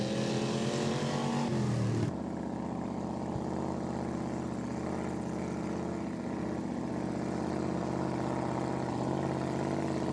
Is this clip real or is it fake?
real